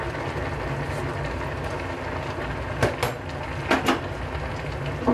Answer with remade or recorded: recorded